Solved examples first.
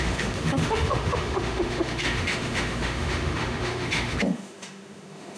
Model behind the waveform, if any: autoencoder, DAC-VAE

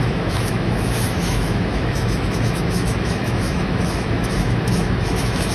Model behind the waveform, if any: autoencoder, DAC-VAE